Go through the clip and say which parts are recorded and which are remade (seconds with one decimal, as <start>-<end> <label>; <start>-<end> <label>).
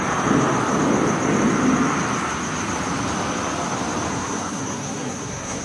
0.0-4.1 recorded; 4.1-5.6 remade